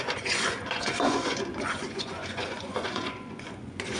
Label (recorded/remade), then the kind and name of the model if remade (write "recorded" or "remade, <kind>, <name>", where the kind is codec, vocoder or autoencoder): remade, vocoder, Vocos